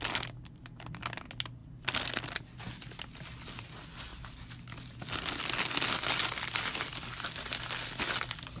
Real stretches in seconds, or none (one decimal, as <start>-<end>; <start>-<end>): 0.0-8.6